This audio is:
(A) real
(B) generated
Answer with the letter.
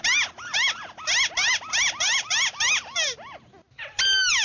A